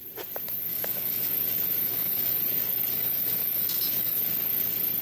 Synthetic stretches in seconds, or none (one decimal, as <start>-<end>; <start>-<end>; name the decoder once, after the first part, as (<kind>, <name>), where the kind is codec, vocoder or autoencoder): 0.7-1.3 (autoencoder, DAC-VAE); 1.8-2.4; 2.9-4.2